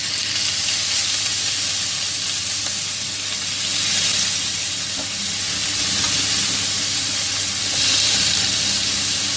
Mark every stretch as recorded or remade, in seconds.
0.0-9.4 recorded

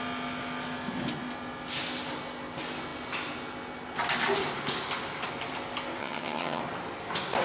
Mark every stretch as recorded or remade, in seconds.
0.0-6.0 recorded; 6.0-6.6 remade; 6.6-7.4 recorded

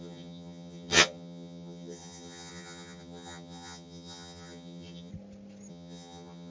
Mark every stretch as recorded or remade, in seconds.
0.0-5.1 remade; 5.1-5.7 recorded; 5.7-6.5 remade

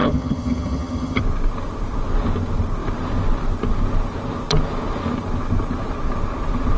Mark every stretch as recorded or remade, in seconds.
0.0-1.2 remade; 1.2-6.8 recorded

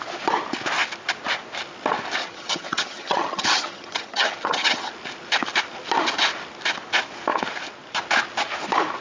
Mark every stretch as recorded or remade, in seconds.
0.0-2.2 recorded; 2.2-4.9 remade; 4.9-9.0 recorded